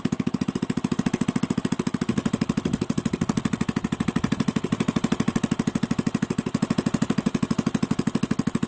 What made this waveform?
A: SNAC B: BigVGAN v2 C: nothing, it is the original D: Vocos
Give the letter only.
C